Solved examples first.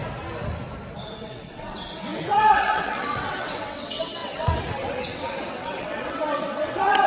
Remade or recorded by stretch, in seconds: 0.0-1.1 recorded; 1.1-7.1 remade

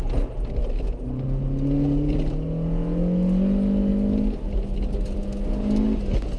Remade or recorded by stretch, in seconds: 0.0-6.4 recorded

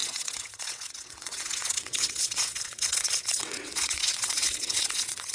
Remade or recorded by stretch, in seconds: 0.0-5.3 remade